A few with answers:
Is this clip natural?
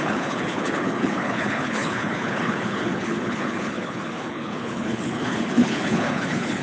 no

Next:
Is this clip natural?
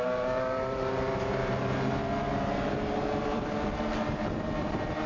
no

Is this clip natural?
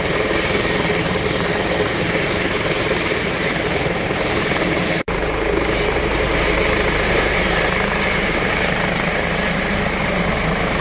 no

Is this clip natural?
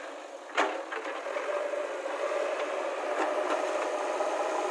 yes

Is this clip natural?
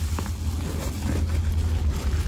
yes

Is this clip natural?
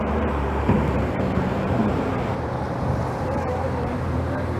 no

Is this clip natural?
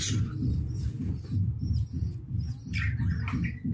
yes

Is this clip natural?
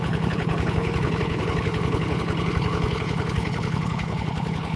no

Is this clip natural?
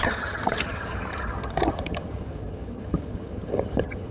no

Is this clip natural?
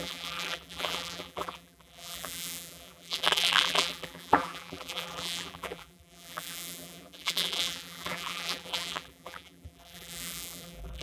no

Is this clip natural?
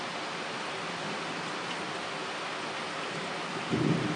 yes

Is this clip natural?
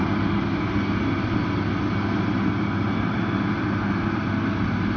yes